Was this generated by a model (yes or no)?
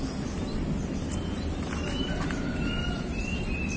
no